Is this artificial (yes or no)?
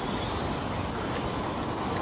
no